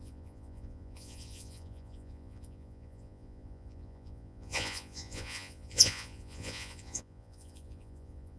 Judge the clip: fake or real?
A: fake